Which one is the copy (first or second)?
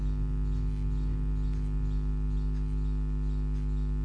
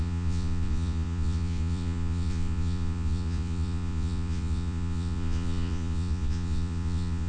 second